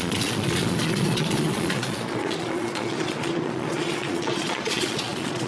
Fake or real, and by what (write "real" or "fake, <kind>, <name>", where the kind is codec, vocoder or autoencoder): fake, vocoder, Vocos